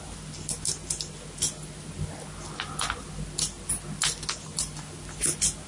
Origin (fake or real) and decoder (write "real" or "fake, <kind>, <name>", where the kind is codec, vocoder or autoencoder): real